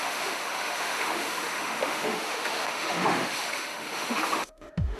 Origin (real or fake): fake